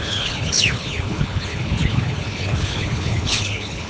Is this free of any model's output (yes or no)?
no